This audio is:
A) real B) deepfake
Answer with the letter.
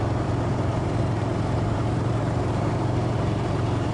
B